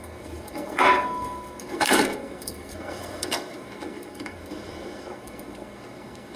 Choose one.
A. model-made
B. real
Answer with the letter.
A